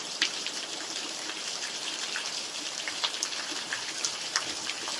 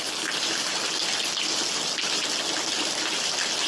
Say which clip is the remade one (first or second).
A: first